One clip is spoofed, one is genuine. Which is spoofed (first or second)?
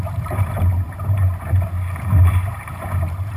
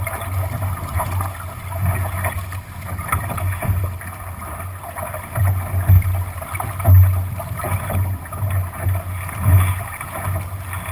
first